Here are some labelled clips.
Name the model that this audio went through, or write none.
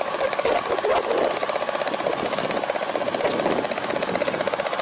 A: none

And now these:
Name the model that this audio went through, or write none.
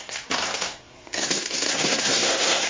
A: codec, SNAC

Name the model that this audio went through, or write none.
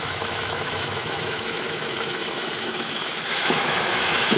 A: autoencoder, DAC-VAE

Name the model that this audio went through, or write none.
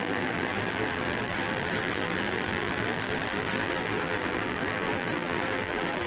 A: vocoder, BigVGAN v2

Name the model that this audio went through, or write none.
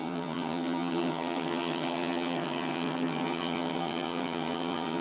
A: vocoder, HiFi-GAN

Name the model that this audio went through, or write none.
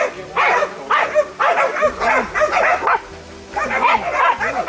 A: none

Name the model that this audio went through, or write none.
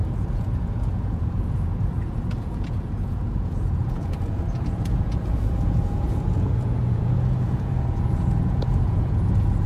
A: vocoder, Vocos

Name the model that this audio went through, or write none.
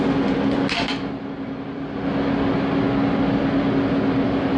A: none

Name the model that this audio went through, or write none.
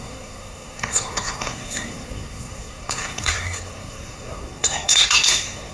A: codec, SNAC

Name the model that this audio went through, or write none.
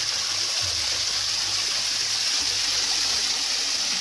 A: none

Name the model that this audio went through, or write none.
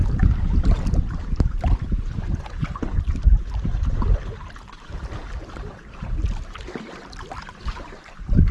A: none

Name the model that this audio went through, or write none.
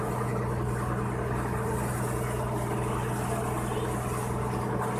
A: none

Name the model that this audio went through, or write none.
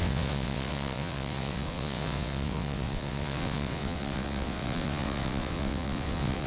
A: vocoder, WaveNeXt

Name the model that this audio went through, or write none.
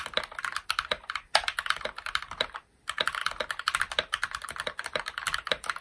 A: vocoder, BigVGAN v2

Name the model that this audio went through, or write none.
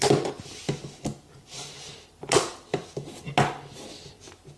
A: none